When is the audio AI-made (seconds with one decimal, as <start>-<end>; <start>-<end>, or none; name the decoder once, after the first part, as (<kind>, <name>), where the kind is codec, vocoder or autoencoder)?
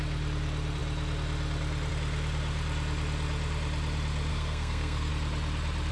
4.3-5.1 (codec, SNAC)